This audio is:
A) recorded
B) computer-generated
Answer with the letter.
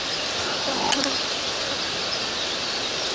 A